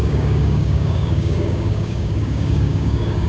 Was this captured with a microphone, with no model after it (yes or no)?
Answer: no